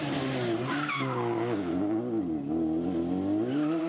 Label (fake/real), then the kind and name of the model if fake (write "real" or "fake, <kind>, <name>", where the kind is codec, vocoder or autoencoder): real